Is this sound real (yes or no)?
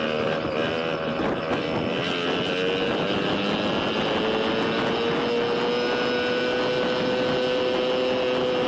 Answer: yes